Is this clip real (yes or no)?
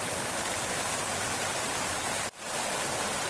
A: yes